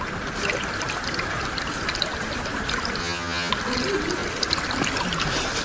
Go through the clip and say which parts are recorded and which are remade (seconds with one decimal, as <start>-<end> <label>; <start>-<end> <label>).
0.0-3.0 recorded; 3.0-3.5 remade; 3.5-5.6 recorded